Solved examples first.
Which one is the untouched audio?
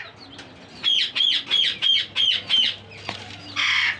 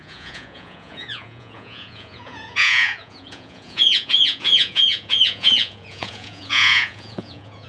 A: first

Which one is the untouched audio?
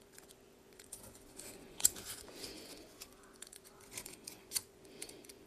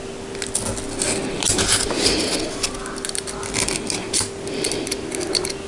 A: second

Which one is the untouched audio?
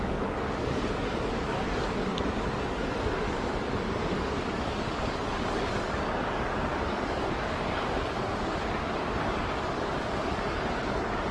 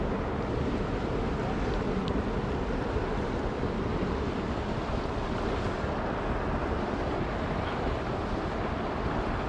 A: second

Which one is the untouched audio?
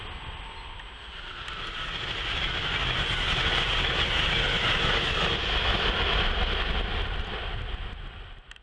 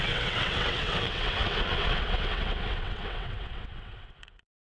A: first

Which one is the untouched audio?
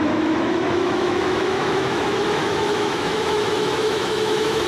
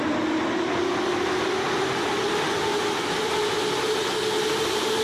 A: second